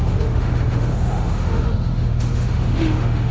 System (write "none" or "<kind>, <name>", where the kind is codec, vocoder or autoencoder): autoencoder, DAC-VAE